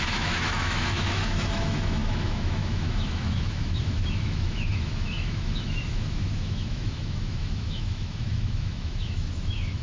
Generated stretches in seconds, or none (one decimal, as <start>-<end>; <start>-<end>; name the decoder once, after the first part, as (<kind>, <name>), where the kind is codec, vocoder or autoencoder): 0.0-9.8 (autoencoder, DAC-VAE)